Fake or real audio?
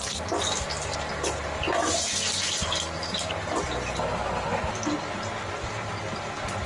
real